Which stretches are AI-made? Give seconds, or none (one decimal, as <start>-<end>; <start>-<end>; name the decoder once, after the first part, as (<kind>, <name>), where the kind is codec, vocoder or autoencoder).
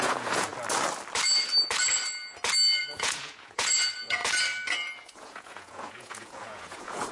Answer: 0.0-0.5 (vocoder, Vocos); 2.8-4.2; 5.0-7.1